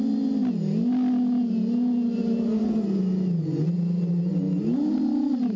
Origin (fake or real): real